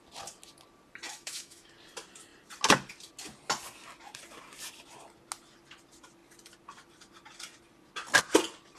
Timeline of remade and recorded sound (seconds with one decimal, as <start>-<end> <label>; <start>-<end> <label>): 0.0-1.1 recorded; 1.1-1.7 remade; 1.7-8.8 recorded